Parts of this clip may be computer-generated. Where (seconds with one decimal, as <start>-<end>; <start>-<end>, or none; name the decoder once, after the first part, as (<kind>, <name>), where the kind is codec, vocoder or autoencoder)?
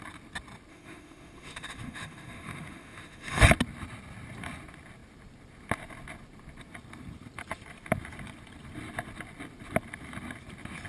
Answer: 0.7-3.4 (autoencoder, DAC-VAE)